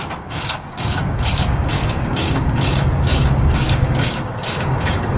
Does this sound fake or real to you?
fake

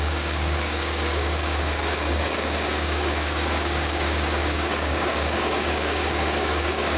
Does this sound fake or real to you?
fake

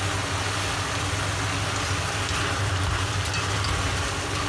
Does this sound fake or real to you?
real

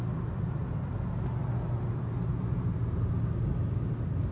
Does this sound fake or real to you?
real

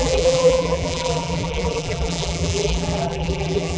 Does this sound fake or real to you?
fake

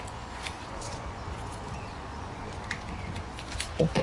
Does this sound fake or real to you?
fake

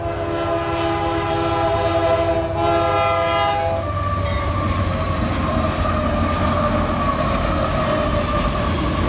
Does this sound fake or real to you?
real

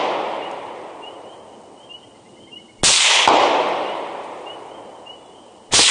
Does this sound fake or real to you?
real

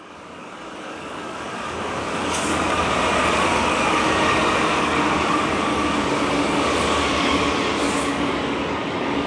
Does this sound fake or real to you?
fake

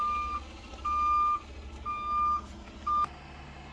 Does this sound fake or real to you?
real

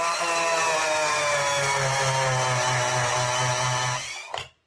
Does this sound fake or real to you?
real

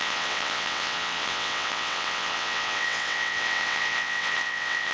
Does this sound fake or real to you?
fake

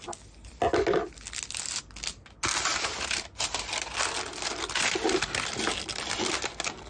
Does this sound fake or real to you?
real